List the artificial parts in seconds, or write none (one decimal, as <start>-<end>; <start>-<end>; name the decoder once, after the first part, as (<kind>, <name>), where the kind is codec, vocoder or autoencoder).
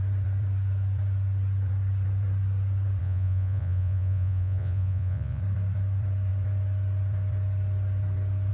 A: 3.0-5.4 (vocoder, Vocos)